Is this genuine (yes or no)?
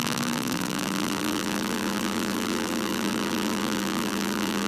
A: no